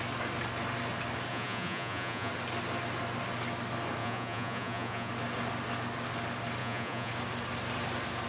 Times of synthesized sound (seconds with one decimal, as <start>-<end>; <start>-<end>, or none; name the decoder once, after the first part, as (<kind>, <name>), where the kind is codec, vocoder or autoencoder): 1.3-2.3 (vocoder, Vocos); 4.0-5.1; 6.6-7.1